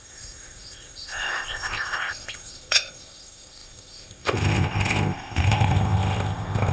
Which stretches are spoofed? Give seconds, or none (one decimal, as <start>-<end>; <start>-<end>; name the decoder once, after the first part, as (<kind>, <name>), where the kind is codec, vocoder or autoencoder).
0.0-6.7 (codec, ZipCodec)